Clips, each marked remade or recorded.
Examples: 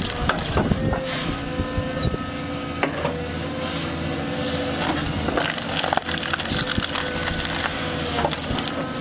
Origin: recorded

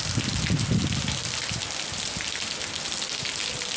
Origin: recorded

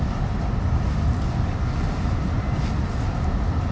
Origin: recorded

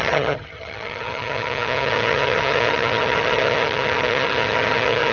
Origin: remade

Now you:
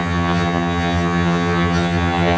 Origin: remade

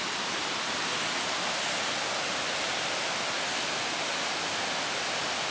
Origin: recorded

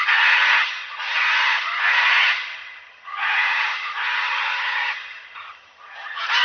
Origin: remade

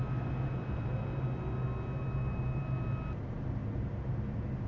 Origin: recorded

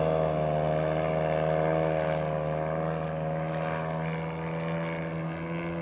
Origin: recorded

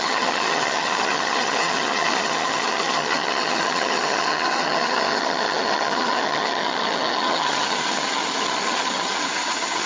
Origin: remade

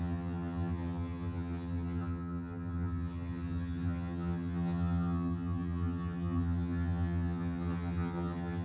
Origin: remade